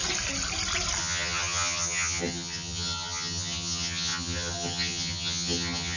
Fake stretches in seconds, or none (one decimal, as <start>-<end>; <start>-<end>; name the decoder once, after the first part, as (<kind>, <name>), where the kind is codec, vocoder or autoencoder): 1.0-6.0 (vocoder, HiFi-GAN)

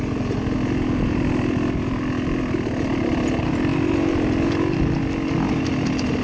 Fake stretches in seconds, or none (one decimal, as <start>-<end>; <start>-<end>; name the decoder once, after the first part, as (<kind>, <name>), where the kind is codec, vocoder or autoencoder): none

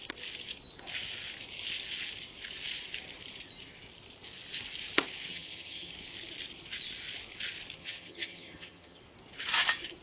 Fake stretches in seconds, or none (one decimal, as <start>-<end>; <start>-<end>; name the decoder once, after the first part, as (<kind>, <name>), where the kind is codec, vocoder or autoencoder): 5.3-5.9 (vocoder, HiFi-GAN); 7.8-9.0

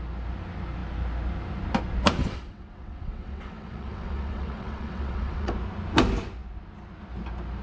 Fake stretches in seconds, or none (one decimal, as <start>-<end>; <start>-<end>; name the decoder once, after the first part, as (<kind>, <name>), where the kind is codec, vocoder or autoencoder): 2.2-5.5 (vocoder, WaveNeXt)

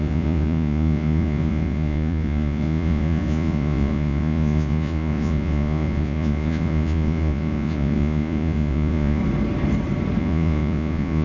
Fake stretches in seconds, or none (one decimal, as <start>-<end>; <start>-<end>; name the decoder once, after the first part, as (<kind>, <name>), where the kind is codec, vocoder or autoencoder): 0.0-9.2 (vocoder, Vocos); 10.2-11.2

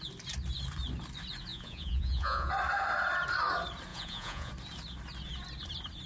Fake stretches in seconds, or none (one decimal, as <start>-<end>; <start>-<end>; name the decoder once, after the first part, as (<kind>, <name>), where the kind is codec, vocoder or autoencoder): 1.5-2.5 (vocoder, Vocos); 3.9-4.5